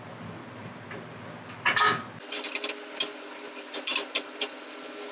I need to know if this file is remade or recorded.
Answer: recorded